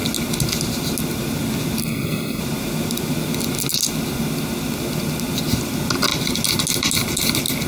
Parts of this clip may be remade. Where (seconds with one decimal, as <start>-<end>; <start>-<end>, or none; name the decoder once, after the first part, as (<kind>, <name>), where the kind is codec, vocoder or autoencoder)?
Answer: 1.8-2.4 (codec, SNAC)

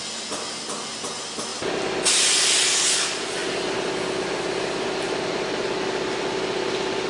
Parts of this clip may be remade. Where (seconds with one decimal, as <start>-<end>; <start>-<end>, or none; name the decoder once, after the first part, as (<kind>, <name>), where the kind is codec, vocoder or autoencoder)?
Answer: none

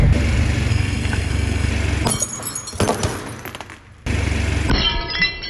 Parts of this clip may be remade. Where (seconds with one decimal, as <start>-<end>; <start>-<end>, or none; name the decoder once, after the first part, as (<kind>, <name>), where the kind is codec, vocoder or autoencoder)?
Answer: 0.7-1.7 (codec, SNAC)

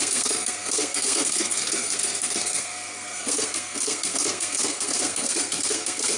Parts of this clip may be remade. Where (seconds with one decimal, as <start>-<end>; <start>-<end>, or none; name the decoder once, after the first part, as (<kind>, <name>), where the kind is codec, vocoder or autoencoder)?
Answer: 0.0-6.2 (codec, SNAC)